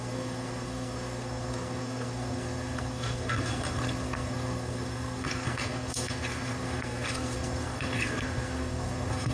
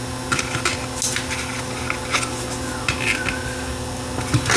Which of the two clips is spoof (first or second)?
first